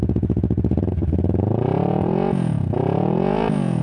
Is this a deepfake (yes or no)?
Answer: yes